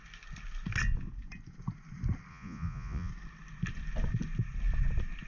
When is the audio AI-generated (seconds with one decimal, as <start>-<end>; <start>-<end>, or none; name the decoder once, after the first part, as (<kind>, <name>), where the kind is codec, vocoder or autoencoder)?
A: 2.3-3.1 (vocoder, Vocos)